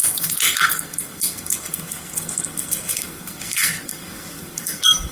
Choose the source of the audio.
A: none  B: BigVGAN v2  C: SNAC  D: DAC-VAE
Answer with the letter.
C